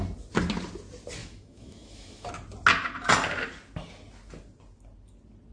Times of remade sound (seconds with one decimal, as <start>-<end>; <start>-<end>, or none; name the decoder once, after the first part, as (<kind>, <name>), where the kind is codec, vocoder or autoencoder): 1.2-2.3 (autoencoder, DAC-VAE)